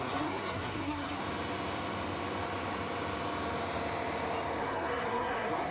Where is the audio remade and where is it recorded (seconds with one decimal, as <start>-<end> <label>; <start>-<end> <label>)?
0.0-1.2 remade; 1.2-4.6 recorded; 4.6-5.7 remade